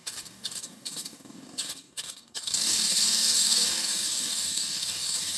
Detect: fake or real fake